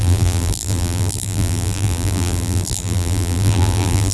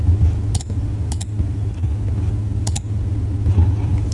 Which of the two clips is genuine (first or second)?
second